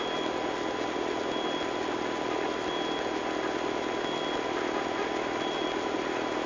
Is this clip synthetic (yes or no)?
no